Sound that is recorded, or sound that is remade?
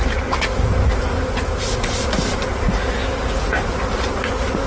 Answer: recorded